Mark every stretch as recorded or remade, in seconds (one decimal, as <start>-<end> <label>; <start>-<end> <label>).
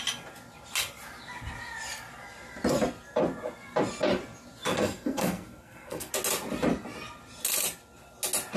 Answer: 0.0-4.7 recorded; 4.7-6.1 remade; 6.1-8.6 recorded